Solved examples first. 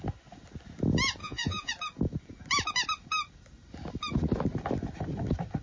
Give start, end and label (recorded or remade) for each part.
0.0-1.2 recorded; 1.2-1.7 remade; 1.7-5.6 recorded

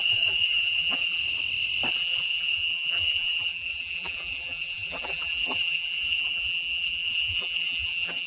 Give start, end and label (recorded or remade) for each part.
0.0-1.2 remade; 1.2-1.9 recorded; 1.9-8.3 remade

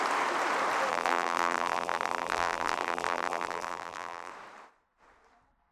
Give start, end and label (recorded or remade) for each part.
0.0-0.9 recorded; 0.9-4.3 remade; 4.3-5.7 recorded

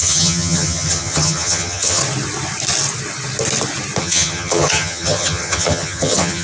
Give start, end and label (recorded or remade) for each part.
0.0-2.0 remade; 2.0-4.0 recorded; 4.0-6.4 remade

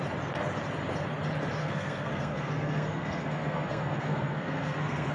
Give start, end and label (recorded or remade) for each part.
0.0-1.6 recorded; 1.6-5.1 remade

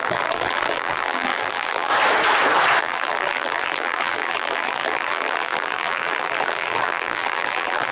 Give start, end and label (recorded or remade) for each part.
0.0-1.9 remade; 1.9-2.8 recorded; 2.8-7.9 remade

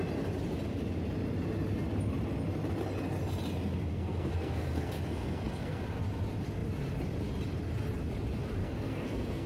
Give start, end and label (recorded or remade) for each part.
0.0-3.9 recorded; 3.9-5.8 remade; 5.8-8.6 recorded; 8.6-9.5 remade

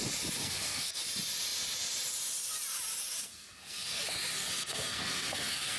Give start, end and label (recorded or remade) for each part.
0.0-0.4 recorded; 0.4-1.0 remade; 1.0-3.2 recorded; 3.2-4.0 remade; 4.0-4.6 recorded; 4.6-5.8 remade